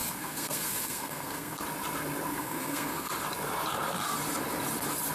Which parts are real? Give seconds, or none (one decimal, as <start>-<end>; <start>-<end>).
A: 1.6-2.3; 3.1-5.1